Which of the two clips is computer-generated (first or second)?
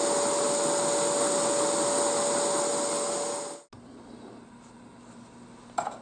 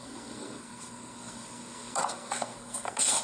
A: second